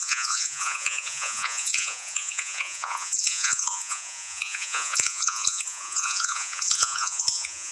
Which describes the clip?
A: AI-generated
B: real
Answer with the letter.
A